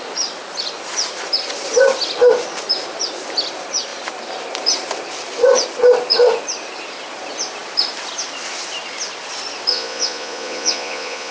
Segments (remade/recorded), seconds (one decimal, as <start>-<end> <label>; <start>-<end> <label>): 0.0-9.7 recorded; 9.7-11.3 remade